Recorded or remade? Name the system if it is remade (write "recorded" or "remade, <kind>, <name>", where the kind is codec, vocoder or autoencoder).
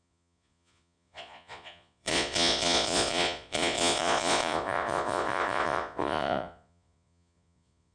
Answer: remade, vocoder, Vocos